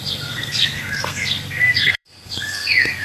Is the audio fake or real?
fake